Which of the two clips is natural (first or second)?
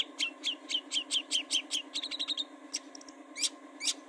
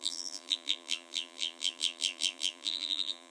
first